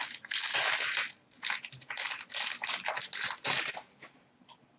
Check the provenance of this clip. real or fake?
real